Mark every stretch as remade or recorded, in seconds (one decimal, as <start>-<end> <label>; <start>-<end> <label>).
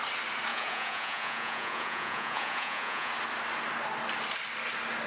0.0-0.5 recorded; 0.5-3.1 remade; 3.1-5.1 recorded